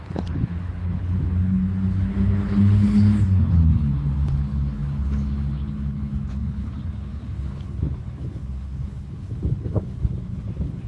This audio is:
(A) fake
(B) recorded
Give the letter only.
A